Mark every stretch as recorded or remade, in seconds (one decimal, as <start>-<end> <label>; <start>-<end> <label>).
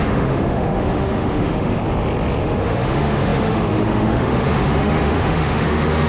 0.0-1.8 remade; 1.8-2.4 recorded; 2.4-6.1 remade